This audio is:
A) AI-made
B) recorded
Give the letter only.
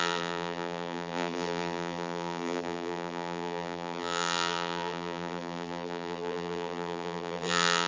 A